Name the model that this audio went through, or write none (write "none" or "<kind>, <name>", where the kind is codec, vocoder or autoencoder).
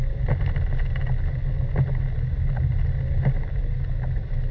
none